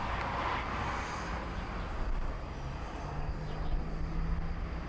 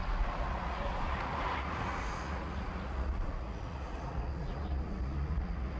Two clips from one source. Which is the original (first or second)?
first